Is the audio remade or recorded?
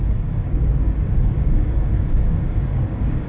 remade